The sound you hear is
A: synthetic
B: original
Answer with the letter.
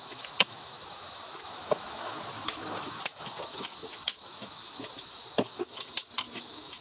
A